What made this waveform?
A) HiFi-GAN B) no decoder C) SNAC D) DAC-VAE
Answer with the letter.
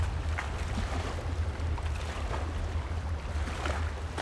B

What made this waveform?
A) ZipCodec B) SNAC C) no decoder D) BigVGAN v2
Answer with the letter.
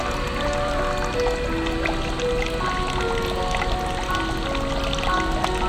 C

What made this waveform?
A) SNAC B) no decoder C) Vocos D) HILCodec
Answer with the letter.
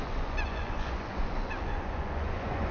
C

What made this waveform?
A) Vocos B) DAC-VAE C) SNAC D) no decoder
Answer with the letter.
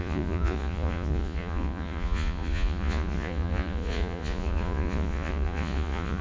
A